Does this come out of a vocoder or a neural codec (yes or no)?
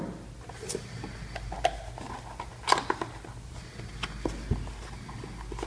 no